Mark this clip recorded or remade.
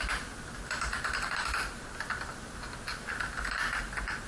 recorded